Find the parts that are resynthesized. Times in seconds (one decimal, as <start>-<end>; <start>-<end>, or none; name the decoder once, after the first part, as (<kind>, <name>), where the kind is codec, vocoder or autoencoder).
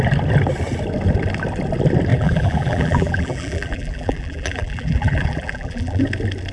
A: 2.1-6.0 (vocoder, BigVGAN v2)